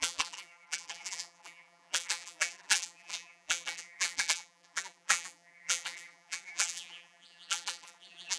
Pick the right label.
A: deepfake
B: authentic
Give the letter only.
A